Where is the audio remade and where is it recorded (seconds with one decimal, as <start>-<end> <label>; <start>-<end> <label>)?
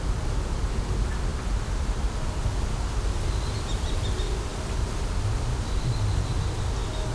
0.0-1.3 recorded; 1.3-2.4 remade; 2.4-4.5 recorded; 4.5-5.0 remade; 5.0-7.1 recorded